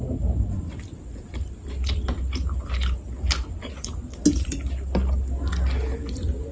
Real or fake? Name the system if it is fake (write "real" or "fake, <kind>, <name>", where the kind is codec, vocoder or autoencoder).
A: real